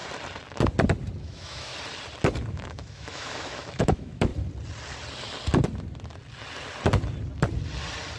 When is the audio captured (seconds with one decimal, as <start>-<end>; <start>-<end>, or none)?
0.0-1.2; 1.7-2.5; 4.3-8.2